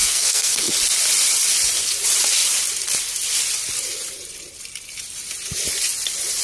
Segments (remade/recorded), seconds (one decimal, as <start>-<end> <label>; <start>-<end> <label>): 0.0-0.7 remade; 0.7-6.4 recorded